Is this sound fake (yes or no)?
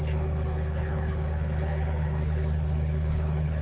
yes